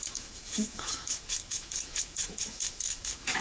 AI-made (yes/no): yes